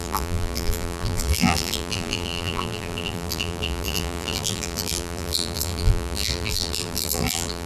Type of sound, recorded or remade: remade